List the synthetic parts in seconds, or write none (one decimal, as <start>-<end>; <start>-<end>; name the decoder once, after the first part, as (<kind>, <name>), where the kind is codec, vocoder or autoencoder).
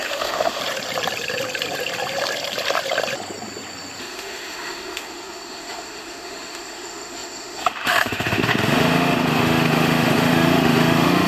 0.0-0.6 (autoencoder, DAC-VAE); 4.0-11.3